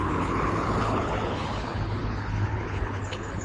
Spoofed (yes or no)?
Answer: yes